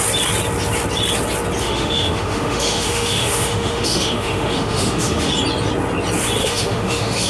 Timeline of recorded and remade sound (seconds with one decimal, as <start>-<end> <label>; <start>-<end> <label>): 0.0-1.6 recorded; 1.6-5.3 remade; 5.3-6.4 recorded; 6.4-7.3 remade